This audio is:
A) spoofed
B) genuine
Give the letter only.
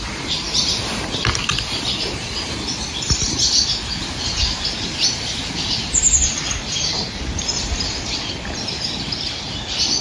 B